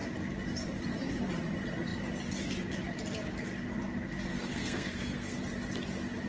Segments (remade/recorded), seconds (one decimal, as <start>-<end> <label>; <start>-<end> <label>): 0.0-4.3 recorded; 4.3-5.4 remade; 5.4-6.3 recorded

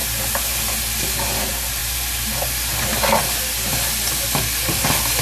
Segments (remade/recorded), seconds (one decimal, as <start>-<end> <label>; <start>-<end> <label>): 0.0-5.2 recorded

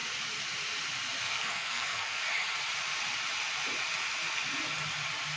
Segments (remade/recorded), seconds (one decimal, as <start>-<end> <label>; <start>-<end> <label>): 0.0-1.2 recorded; 1.2-2.2 remade; 2.2-5.4 recorded

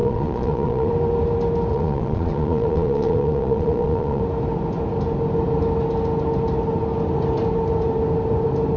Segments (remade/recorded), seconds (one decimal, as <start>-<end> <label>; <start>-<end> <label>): 0.0-0.9 remade; 0.9-1.7 recorded; 1.7-4.2 remade; 4.2-8.8 recorded